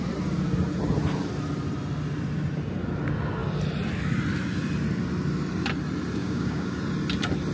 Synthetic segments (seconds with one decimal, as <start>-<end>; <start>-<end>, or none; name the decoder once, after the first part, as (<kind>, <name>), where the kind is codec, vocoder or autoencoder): 6.2-6.8 (codec, DAC)